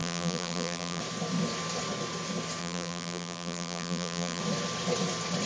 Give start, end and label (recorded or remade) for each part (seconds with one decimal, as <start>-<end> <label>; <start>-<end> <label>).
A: 0.0-1.0 remade; 1.0-2.6 recorded; 2.6-4.4 remade; 4.4-5.5 recorded